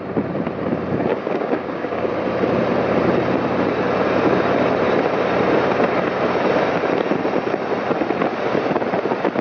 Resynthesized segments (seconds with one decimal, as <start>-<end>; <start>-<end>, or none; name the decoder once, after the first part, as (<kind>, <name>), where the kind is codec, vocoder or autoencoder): 1.1-2.1 (codec, DAC)

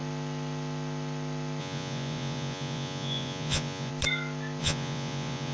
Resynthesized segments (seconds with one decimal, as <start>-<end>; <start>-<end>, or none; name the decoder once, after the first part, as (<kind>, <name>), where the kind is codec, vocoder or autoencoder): 1.6-3.9 (vocoder, Vocos); 4.6-5.5